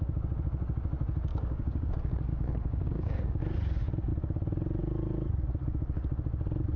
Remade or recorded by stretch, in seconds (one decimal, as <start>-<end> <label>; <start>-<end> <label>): 0.0-1.3 recorded; 1.3-1.9 remade; 1.9-2.3 recorded; 2.3-3.4 remade; 3.4-6.8 recorded